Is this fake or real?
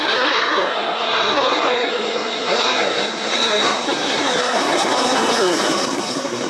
fake